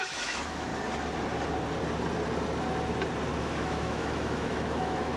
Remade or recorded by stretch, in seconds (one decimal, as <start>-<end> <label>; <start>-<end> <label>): 0.0-0.7 remade; 0.7-3.4 recorded; 3.4-5.2 remade